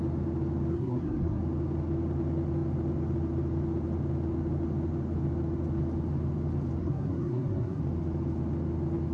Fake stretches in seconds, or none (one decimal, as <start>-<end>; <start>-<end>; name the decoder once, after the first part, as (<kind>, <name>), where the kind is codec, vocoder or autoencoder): 0.7-1.4 (codec, SNAC); 6.8-7.8